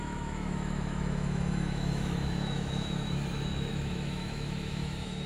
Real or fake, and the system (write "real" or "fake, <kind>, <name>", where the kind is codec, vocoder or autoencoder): fake, autoencoder, DAC-VAE